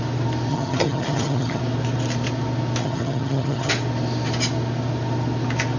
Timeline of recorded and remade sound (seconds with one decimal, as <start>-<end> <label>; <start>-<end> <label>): 0.0-0.5 recorded; 0.5-1.6 remade; 1.6-2.8 recorded; 2.8-3.7 remade; 3.7-5.8 recorded